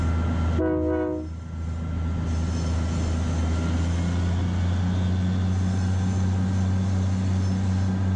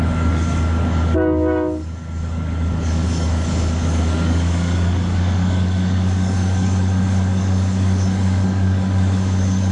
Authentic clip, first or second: first